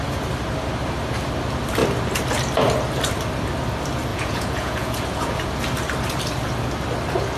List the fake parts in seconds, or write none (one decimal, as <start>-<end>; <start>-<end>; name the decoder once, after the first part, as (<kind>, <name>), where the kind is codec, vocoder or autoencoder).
4.1-5.6 (vocoder, Vocos)